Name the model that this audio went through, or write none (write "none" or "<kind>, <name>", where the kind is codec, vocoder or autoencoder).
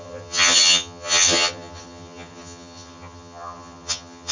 vocoder, HiFi-GAN